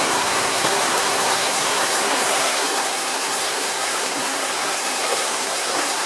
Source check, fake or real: fake